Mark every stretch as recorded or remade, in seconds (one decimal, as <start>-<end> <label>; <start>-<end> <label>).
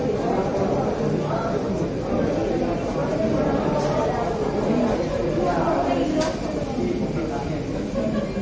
0.0-8.4 recorded